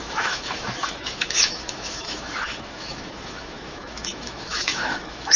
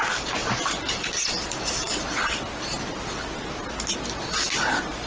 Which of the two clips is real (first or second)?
second